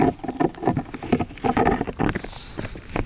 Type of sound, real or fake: real